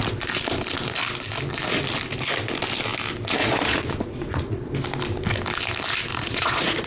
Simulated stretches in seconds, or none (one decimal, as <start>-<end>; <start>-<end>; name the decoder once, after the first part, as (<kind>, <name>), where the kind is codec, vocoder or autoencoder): 3.4-4.7 (vocoder, Vocos); 6.1-6.9